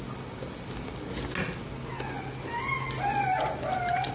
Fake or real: real